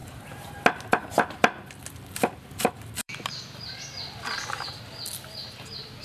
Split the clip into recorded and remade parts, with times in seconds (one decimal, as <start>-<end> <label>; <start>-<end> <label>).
0.0-0.6 remade; 0.6-3.0 recorded; 3.0-3.7 remade; 3.7-6.0 recorded